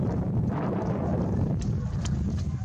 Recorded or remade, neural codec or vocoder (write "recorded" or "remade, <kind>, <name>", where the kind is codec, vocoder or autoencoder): remade, vocoder, BigVGAN v2